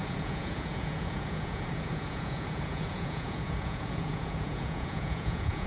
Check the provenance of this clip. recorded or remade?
remade